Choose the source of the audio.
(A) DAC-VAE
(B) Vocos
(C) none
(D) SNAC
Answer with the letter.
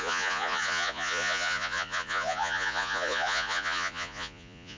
B